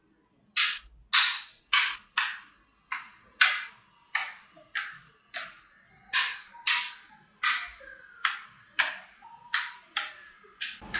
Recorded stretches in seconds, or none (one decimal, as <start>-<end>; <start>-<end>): 0.0-11.0